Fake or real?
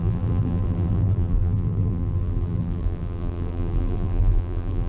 fake